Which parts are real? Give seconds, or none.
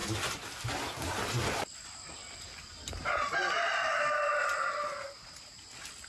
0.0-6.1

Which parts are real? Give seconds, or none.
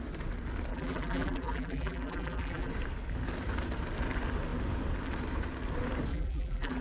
0.0-0.7; 2.7-6.1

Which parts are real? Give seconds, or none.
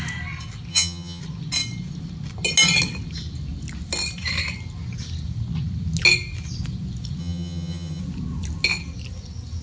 0.0-0.7; 1.2-7.2; 8.0-9.6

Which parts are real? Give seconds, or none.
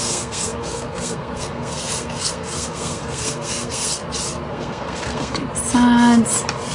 4.0-4.5; 5.4-6.7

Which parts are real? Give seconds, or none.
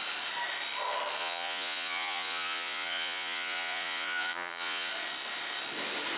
0.0-1.2; 4.9-6.2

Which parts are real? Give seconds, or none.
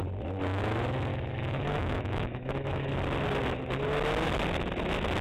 0.0-1.1; 2.9-5.2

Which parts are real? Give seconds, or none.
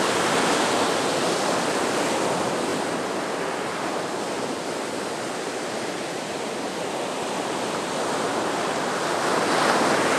0.0-10.2